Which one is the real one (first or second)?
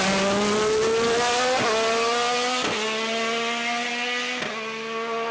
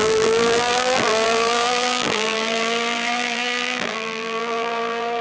first